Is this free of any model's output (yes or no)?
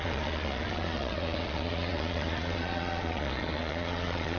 no